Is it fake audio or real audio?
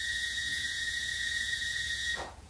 fake